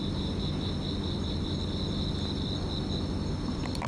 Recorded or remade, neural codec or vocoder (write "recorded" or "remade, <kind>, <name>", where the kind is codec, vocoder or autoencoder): recorded